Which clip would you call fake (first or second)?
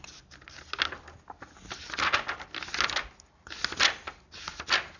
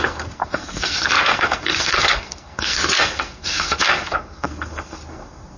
second